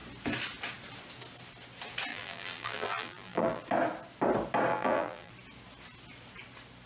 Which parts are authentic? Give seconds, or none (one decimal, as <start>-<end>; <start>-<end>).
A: 0.0-2.1; 3.6-4.7; 5.3-6.9